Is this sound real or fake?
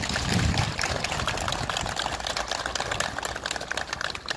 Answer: real